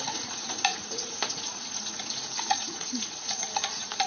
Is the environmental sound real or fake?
fake